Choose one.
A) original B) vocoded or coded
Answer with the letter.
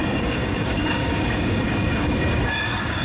B